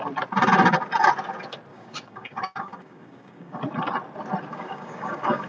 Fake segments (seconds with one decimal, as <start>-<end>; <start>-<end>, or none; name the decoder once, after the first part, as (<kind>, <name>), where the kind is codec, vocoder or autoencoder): 1.7-3.6 (codec, DAC); 4.5-5.5